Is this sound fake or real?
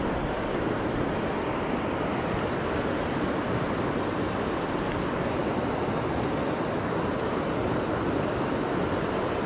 real